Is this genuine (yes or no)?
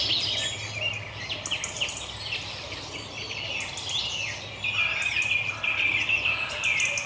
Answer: yes